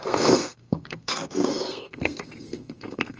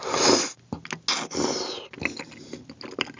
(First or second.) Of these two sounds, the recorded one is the second